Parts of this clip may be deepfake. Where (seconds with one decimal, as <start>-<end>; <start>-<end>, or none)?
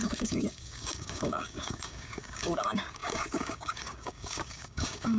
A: 0.0-5.2